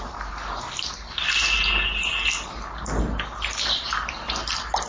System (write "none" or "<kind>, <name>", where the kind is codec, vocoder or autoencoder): none